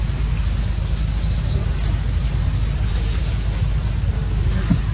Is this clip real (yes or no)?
yes